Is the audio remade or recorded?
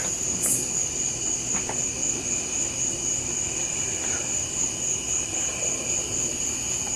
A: recorded